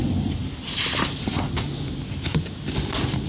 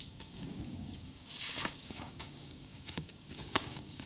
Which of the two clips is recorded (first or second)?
first